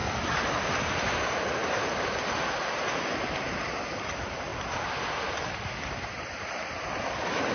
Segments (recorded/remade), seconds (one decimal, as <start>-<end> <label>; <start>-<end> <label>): 0.0-0.6 recorded; 0.6-4.5 remade; 4.5-6.1 recorded; 6.1-7.5 remade